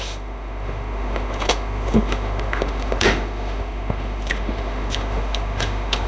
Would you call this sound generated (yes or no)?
yes